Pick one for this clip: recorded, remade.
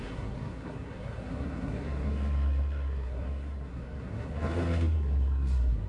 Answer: remade